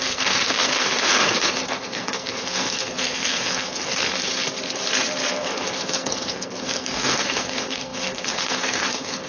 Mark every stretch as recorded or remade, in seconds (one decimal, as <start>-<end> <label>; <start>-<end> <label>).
0.0-4.3 remade; 4.3-5.3 recorded; 5.3-9.3 remade